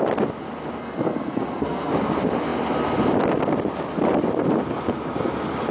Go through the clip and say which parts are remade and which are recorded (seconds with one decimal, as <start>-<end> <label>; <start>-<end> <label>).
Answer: 0.0-0.8 recorded; 0.8-1.9 remade; 1.9-5.7 recorded